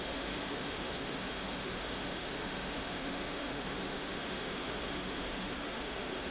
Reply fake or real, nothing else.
fake